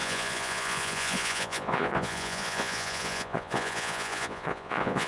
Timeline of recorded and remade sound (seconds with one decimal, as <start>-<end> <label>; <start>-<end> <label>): 0.0-5.1 remade